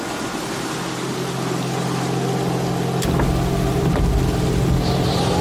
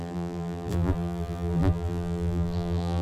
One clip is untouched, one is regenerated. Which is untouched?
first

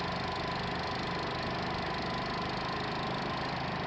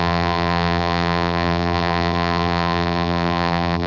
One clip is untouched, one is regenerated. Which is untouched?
first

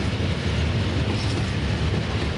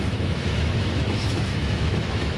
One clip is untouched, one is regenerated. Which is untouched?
first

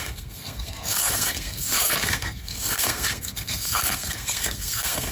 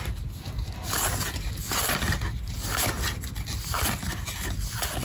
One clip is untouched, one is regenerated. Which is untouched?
second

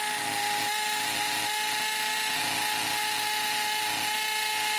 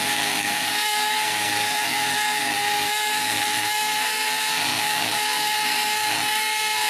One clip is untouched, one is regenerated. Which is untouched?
first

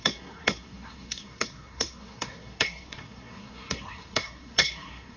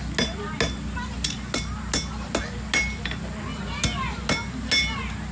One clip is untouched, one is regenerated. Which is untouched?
second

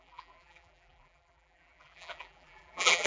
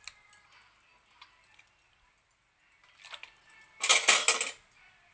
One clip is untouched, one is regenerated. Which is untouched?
second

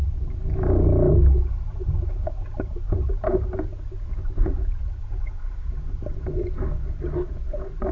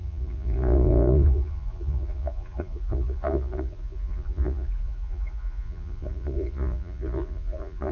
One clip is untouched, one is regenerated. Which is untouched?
first